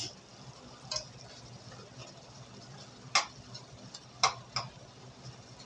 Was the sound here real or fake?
real